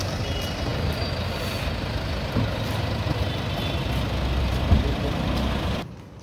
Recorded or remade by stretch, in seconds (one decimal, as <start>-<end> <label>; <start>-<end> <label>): 0.0-6.2 recorded